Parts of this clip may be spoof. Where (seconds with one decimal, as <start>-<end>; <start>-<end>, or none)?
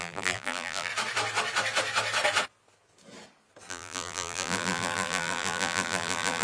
0.0-0.9; 3.7-6.4